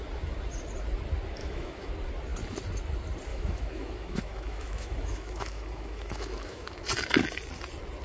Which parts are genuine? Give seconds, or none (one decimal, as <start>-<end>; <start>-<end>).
0.0-1.4; 1.9-3.3; 6.8-8.0